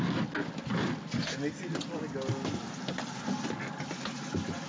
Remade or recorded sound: recorded